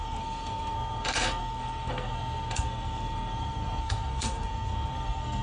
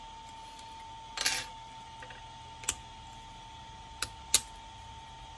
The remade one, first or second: first